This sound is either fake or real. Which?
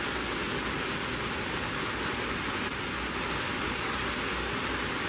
real